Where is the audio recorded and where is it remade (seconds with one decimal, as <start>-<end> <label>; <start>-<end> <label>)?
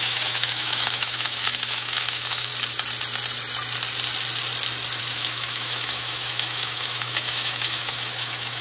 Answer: 0.0-2.5 remade; 2.5-5.0 recorded; 5.0-8.6 remade